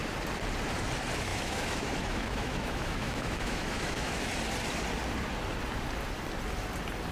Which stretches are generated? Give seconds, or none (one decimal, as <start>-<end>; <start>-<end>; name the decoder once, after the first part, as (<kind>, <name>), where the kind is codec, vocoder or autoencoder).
1.3-4.3 (autoencoder, DAC-VAE)